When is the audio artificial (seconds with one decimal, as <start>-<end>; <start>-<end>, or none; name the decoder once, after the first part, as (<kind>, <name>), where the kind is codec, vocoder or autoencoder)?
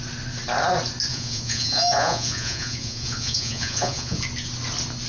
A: 1.1-4.2 (vocoder, Vocos)